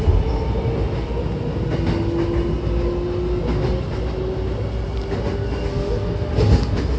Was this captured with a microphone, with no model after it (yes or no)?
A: yes